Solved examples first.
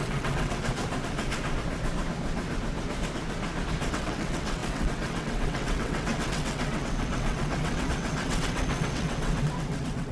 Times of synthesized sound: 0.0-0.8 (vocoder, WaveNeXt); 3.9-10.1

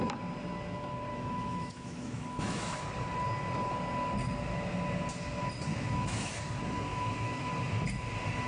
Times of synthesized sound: 1.1-2.8 (autoencoder, DAC-VAE); 5.7-6.3; 6.9-7.5

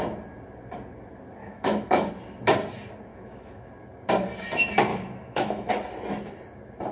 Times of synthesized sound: 1.4-2.1 (autoencoder, DAC-VAE); 3.1-3.7; 4.9-5.7

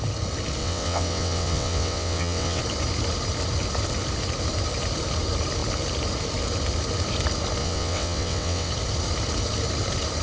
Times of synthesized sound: 0.6-2.6 (vocoder, WaveNeXt); 7.6-8.7

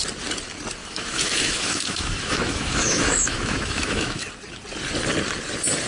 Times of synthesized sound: 0.8-4.3 (autoencoder, DAC-VAE)

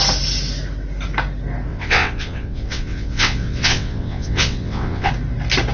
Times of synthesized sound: 1.7-5.1 (vocoder, WaveNeXt)

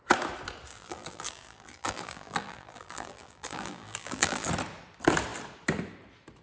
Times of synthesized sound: 0.7-4.5 (vocoder, BigVGAN v2)